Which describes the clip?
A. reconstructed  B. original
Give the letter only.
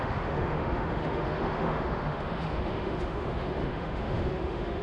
A